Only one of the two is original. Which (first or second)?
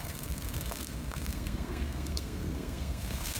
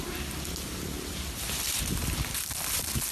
second